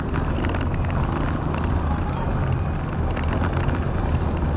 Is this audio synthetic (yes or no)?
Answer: no